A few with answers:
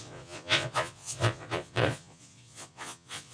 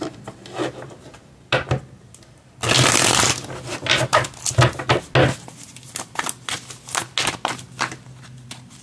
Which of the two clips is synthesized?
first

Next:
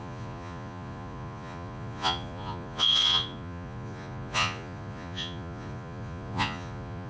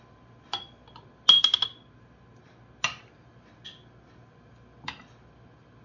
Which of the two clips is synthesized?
first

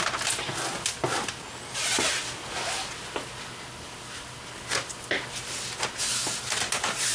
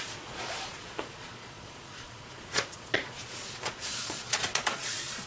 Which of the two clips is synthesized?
second